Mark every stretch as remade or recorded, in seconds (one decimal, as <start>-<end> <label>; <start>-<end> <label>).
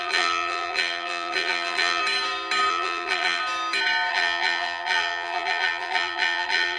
0.0-2.0 remade; 2.0-2.7 recorded; 2.7-3.4 remade; 3.4-4.1 recorded; 4.1-6.8 remade